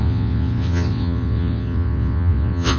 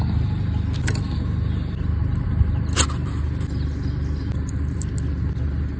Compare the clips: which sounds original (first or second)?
second